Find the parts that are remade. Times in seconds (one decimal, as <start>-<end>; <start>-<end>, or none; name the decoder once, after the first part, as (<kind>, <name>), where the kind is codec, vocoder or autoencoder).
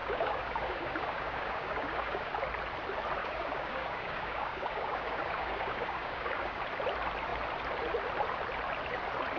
0.0-2.3 (codec, DAC); 3.2-6.6